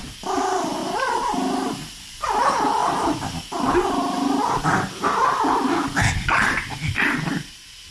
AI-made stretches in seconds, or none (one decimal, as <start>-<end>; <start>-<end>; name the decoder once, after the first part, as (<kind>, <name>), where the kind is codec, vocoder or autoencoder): 0.0-0.8 (vocoder, BigVGAN v2); 2.0-7.9